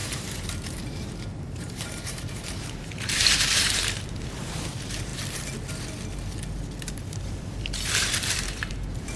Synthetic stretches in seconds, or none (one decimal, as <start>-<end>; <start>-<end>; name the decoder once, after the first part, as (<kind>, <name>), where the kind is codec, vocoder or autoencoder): 0.0-5.1 (vocoder, BigVGAN v2); 6.8-9.2